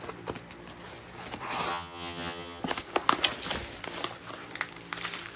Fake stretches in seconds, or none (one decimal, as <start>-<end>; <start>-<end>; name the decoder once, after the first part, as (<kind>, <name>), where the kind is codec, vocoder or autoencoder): 1.7-2.6 (vocoder, HiFi-GAN)